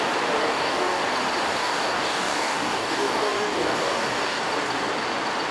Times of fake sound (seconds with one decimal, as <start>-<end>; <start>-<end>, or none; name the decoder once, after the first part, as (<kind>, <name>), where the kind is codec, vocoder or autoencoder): 0.4-1.0 (codec, DAC); 1.6-4.4